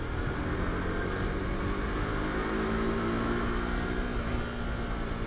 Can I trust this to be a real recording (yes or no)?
yes